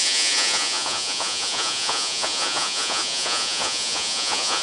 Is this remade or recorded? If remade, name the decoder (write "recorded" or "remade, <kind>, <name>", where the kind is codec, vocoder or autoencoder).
remade, vocoder, Vocos